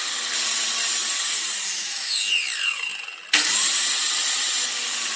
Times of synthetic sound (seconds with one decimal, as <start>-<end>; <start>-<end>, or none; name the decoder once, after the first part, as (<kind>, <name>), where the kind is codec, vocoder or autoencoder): 1.8-2.3 (autoencoder, DAC-VAE)